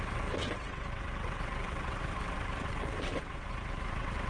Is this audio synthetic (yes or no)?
yes